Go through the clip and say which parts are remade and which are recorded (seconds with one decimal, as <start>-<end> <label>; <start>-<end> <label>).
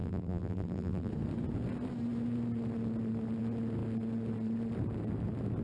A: 0.0-1.1 remade; 1.1-5.6 recorded